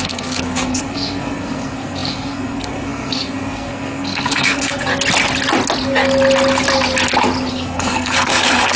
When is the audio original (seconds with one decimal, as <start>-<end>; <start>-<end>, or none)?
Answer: 4.9-7.5